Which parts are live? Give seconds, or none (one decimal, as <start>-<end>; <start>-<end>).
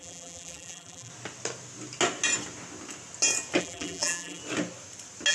1.1-3.6; 4.4-5.3